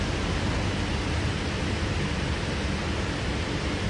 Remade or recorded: recorded